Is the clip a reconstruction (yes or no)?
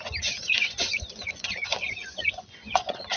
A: yes